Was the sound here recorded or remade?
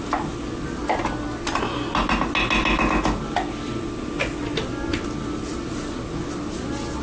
recorded